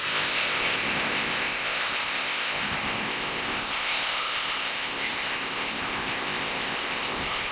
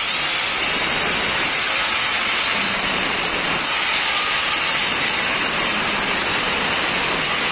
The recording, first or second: second